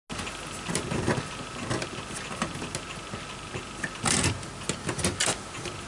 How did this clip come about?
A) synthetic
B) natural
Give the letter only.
B